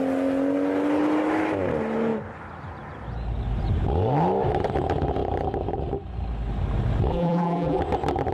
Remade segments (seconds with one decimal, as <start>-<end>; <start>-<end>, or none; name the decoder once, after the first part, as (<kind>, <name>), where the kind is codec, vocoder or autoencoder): 7.1-7.8 (vocoder, BigVGAN v2)